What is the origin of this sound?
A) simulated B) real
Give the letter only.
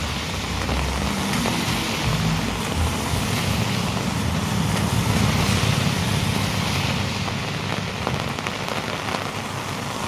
B